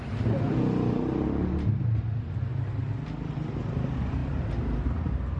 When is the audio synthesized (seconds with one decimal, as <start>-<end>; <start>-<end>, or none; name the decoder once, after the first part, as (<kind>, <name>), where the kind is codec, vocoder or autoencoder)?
none